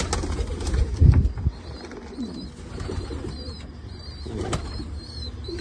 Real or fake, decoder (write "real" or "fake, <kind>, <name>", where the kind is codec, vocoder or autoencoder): real